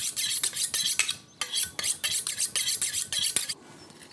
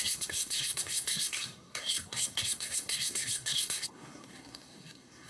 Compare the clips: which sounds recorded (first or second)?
first